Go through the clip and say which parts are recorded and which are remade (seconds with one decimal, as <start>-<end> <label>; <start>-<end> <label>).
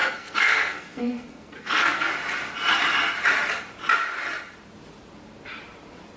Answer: 0.0-2.1 remade; 2.1-6.2 recorded